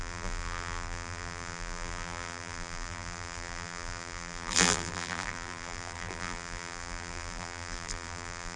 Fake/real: fake